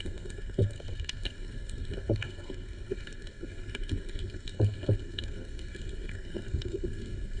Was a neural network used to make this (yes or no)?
yes